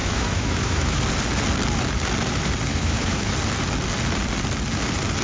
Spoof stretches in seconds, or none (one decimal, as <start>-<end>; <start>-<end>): 0.0-1.0; 2.7-3.3